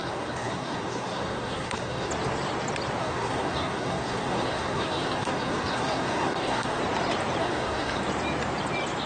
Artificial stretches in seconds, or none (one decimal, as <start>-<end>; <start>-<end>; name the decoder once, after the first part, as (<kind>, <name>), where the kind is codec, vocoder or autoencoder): 0.0-2.1 (codec, SNAC); 3.0-6.8; 7.4-8.0

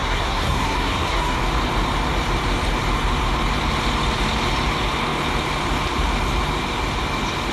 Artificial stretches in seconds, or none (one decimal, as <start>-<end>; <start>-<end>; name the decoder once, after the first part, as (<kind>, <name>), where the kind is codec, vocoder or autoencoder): 0.0-1.4 (codec, SNAC)

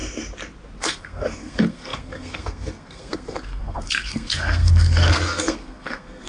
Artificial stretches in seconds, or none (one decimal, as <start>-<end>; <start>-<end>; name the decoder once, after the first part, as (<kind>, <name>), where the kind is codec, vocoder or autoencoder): 0.8-6.3 (codec, SNAC)

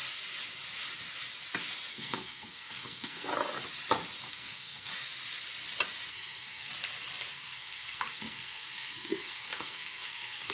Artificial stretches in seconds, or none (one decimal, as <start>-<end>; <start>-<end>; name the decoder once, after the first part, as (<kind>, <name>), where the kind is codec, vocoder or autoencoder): 1.9-3.3 (codec, SNAC); 4.3-4.9; 6.1-6.7; 7.3-10.5

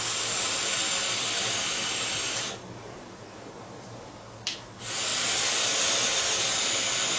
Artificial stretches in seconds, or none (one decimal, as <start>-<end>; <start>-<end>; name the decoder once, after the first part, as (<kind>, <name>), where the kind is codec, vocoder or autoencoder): none

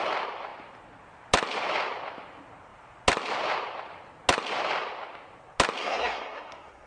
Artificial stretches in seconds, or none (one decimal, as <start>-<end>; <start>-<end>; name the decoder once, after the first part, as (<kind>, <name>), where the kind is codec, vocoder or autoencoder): 5.8-6.9 (codec, SNAC)

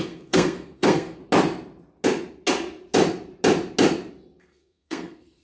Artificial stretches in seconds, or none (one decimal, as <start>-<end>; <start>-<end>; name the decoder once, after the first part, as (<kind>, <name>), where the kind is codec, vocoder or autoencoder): 0.0-1.2 (codec, SNAC); 4.4-5.4